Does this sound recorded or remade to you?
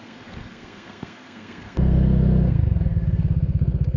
remade